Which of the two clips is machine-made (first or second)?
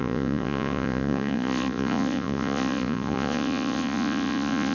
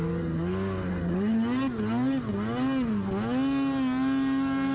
first